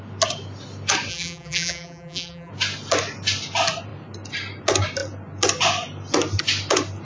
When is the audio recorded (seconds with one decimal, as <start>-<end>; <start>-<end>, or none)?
0.0-1.1; 2.5-7.0